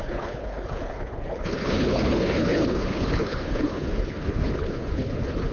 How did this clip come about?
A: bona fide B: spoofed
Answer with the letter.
B